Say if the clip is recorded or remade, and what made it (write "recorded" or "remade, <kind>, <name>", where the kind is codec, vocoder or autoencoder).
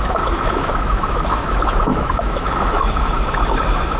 remade, autoencoder, DAC-VAE